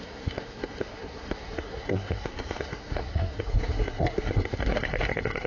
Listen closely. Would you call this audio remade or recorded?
remade